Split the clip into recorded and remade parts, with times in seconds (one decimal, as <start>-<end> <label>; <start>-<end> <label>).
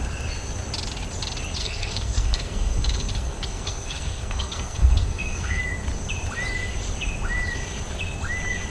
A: 0.0-1.6 recorded; 1.6-5.6 remade; 5.6-8.7 recorded